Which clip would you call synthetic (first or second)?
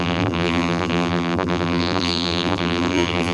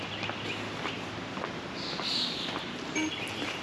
first